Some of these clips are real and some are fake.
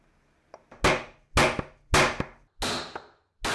real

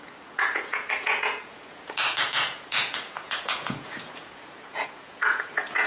fake